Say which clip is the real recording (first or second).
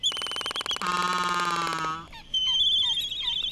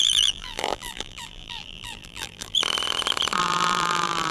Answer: first